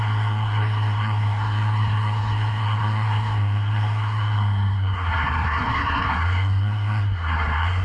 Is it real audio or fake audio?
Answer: fake